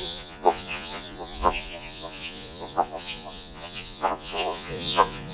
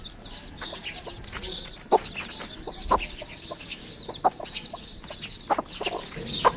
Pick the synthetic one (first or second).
first